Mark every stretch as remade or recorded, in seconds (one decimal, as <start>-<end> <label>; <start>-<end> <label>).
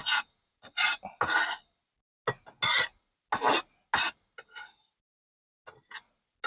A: 0.0-0.6 remade; 0.6-6.5 recorded